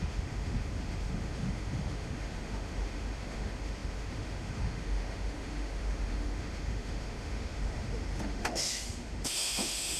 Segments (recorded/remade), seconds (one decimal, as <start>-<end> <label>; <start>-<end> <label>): 0.0-10.0 remade